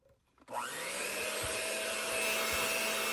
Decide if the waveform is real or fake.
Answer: real